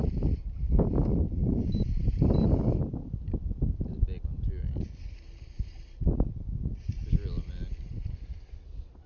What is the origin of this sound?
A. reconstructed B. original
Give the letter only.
B